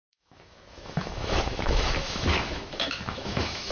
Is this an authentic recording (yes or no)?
no